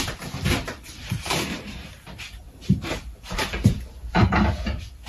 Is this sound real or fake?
fake